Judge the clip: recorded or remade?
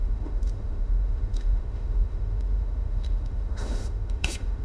remade